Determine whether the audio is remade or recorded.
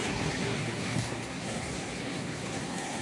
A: remade